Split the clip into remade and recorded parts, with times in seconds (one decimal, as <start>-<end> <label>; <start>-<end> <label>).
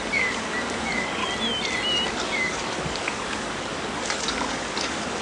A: 0.0-1.2 remade; 1.2-2.1 recorded; 2.1-5.2 remade